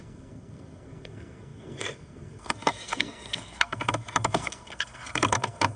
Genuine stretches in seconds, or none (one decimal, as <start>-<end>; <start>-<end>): none